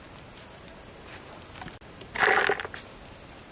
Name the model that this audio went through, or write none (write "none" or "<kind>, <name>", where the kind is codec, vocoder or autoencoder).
none